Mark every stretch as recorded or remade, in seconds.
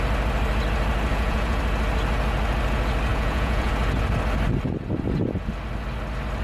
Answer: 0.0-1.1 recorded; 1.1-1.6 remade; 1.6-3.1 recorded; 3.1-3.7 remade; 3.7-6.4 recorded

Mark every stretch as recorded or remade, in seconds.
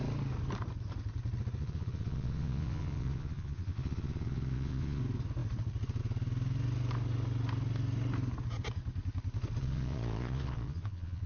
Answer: 0.0-1.6 recorded; 1.6-5.0 remade; 5.0-9.6 recorded; 9.6-11.3 remade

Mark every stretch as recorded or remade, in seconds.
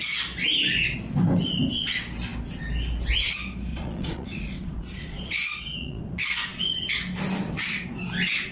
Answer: 0.0-3.7 recorded; 3.7-6.0 remade; 6.0-8.5 recorded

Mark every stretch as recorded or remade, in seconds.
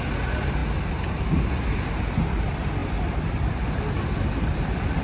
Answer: 0.0-5.0 recorded